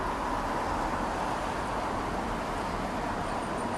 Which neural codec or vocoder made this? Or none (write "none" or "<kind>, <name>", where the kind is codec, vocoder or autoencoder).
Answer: none